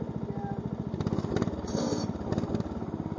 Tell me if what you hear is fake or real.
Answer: real